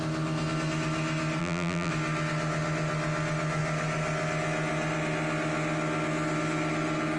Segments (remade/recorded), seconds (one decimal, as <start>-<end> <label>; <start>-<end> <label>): 0.0-1.4 recorded; 1.4-1.9 remade; 1.9-7.2 recorded

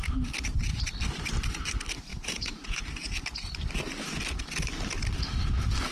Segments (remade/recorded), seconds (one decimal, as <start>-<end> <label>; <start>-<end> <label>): 0.0-2.1 recorded; 2.1-2.8 remade; 2.8-5.9 recorded